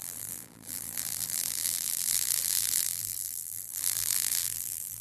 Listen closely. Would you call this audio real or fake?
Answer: fake